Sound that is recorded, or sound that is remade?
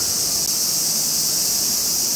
recorded